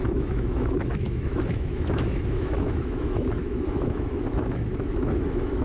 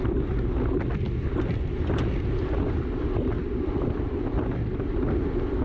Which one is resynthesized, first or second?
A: first